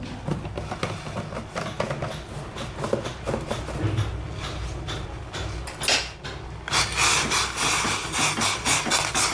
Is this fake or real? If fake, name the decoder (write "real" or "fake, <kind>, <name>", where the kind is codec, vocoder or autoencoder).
real